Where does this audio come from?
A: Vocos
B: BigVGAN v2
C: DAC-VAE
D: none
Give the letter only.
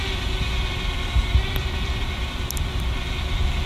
B